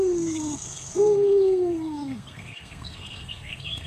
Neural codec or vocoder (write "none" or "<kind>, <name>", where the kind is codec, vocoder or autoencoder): codec, SNAC